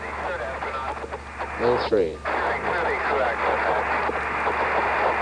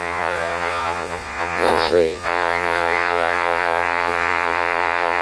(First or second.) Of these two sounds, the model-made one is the second